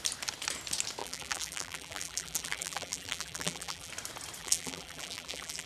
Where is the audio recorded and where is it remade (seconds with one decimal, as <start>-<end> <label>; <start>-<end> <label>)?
0.0-1.0 recorded; 1.0-3.9 remade; 3.9-4.4 recorded; 4.4-5.7 remade